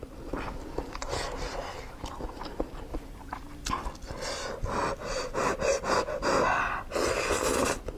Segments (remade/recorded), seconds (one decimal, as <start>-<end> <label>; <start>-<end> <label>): 0.0-1.0 recorded; 1.0-2.4 remade; 2.4-2.9 recorded; 2.9-3.7 remade; 3.7-8.0 recorded